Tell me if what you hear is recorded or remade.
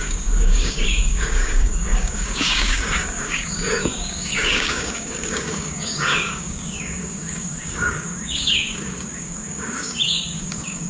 remade